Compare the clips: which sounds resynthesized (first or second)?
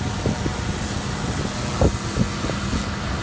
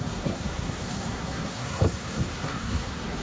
second